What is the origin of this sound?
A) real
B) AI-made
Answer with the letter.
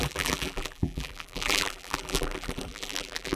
B